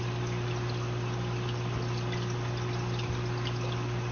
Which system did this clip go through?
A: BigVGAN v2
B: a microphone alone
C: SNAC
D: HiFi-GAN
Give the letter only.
B